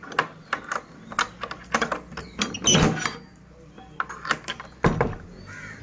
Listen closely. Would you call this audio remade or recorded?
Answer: recorded